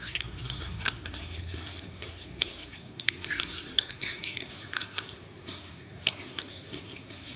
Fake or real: fake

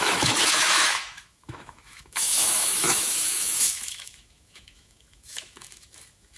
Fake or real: fake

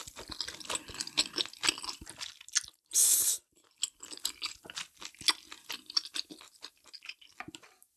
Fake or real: real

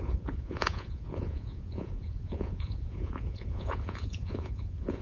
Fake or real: fake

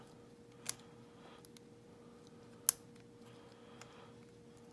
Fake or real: real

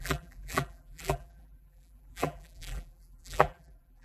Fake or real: fake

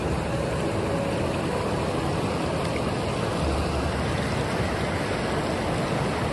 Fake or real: real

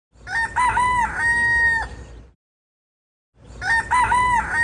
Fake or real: real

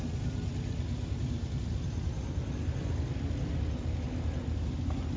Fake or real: real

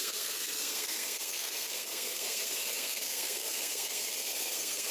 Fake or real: fake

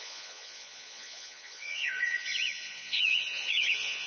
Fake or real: fake